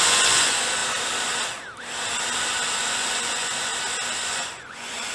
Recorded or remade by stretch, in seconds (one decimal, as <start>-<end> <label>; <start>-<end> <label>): 0.0-0.8 remade; 0.8-2.8 recorded; 2.8-3.7 remade; 3.7-4.2 recorded; 4.2-5.1 remade